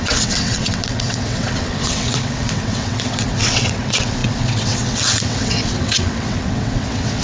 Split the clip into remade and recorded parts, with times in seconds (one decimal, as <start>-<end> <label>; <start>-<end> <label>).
0.0-7.2 remade